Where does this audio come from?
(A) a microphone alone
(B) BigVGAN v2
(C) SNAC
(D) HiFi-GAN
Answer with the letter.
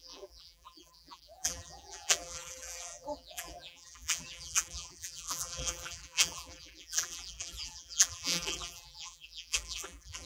B